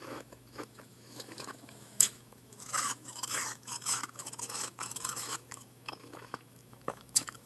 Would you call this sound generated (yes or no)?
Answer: yes